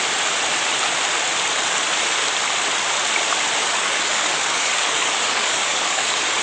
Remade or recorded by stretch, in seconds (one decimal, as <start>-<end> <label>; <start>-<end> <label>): 0.0-3.6 recorded; 3.6-6.4 remade